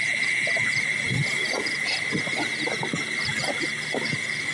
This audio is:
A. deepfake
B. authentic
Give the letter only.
B